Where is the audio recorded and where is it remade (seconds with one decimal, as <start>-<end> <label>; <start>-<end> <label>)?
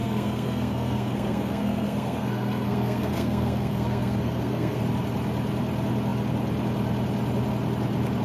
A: 0.0-4.8 remade; 4.8-8.2 recorded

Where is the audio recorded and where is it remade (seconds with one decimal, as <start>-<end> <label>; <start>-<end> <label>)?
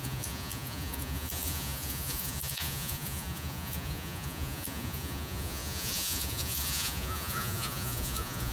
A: 0.0-8.5 remade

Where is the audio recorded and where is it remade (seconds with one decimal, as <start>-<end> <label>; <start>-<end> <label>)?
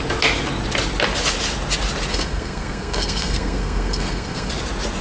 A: 0.0-2.1 recorded; 2.1-4.5 remade; 4.5-5.0 recorded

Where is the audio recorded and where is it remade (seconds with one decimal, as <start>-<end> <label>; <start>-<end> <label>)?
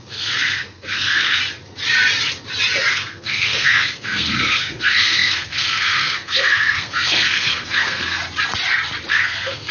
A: 0.0-1.4 remade; 1.4-2.9 recorded; 2.9-8.2 remade; 8.2-9.1 recorded; 9.1-9.7 remade